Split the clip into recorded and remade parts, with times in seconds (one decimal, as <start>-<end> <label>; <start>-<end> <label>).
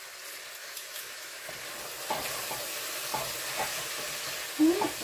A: 0.0-0.6 recorded; 0.6-1.5 remade; 1.5-5.0 recorded